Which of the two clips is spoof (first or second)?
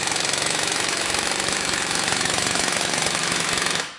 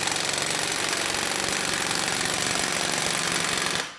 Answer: first